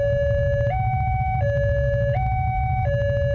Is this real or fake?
real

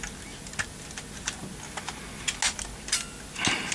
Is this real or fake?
real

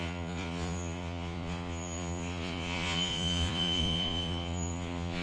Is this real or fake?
fake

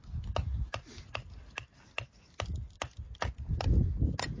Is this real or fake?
real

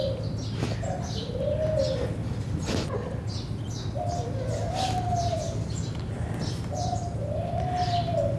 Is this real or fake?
real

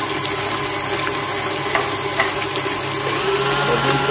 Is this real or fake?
real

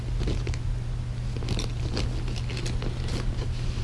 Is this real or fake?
real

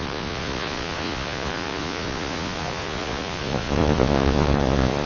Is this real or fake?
fake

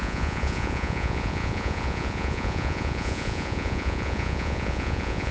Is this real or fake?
fake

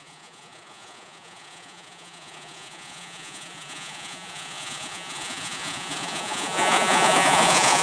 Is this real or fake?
fake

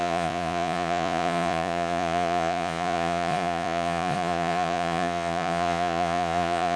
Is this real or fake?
fake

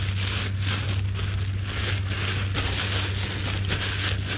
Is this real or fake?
real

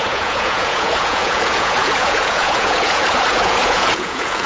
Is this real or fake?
fake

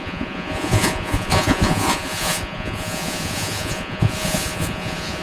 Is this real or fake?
fake